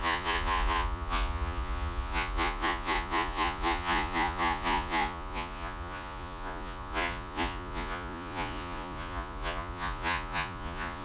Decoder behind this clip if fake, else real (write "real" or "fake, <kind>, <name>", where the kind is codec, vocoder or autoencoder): fake, vocoder, Vocos